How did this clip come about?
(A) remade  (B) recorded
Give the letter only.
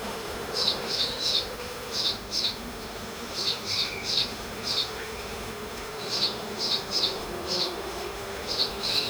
A